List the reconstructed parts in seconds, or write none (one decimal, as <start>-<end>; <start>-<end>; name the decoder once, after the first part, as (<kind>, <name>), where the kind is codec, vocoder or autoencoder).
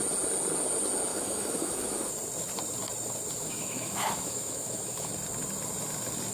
1.1-2.1 (autoencoder, DAC-VAE); 3.4-5.1